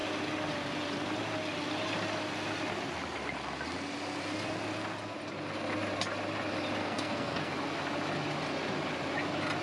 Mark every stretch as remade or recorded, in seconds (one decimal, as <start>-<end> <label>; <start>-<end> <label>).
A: 0.0-6.8 recorded; 6.8-7.5 remade; 7.5-9.6 recorded